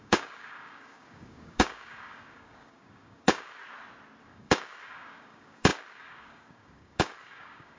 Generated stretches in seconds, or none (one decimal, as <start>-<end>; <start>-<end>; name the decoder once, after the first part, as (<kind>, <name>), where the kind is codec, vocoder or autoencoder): 0.0-3.6 (codec, DAC); 4.2-7.8